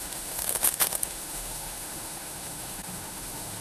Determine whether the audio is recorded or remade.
remade